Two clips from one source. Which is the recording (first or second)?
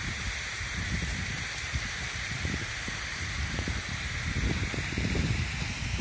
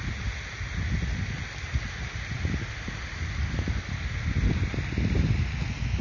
second